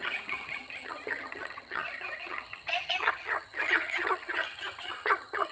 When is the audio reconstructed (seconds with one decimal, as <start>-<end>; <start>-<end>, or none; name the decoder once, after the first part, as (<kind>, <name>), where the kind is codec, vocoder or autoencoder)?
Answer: 0.0-5.5 (vocoder, HiFi-GAN)